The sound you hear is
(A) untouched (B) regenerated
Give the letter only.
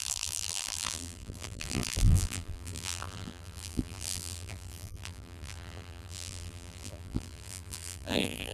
B